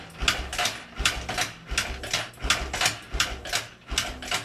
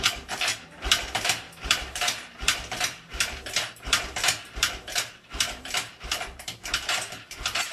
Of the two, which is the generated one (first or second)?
second